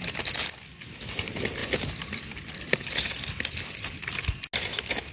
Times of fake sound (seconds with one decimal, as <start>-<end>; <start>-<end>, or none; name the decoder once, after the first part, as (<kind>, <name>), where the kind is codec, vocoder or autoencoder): none